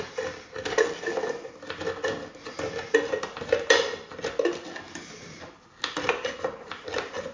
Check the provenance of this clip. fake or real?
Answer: real